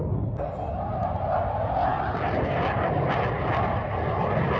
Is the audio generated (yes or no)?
no